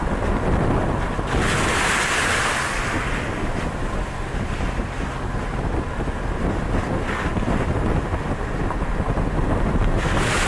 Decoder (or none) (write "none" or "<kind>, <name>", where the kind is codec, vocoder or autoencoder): none